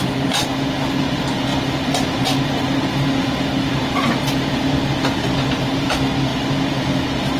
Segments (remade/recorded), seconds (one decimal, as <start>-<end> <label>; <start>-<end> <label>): 0.0-7.4 recorded